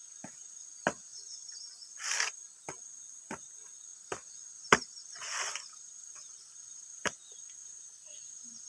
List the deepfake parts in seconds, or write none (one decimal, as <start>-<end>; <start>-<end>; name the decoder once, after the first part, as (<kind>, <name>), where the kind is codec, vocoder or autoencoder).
5.0-8.7 (vocoder, BigVGAN v2)